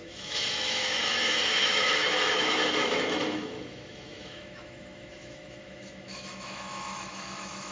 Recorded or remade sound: remade